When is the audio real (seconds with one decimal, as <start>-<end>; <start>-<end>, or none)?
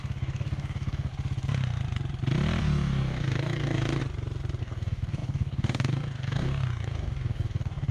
1.1-2.6; 4.0-4.6